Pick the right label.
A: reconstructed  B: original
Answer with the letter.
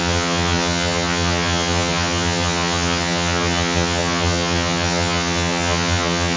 A